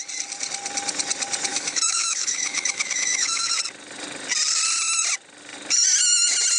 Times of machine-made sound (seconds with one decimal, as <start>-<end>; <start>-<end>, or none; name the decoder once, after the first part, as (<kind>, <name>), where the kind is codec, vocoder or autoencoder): 1.5-3.5 (autoencoder, DAC-VAE)